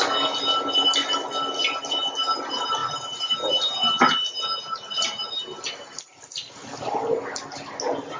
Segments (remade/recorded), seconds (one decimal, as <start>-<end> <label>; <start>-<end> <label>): 0.0-8.2 recorded